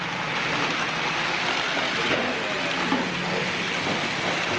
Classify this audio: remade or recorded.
recorded